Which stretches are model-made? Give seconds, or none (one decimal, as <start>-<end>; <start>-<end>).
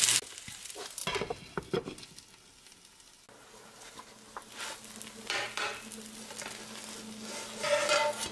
none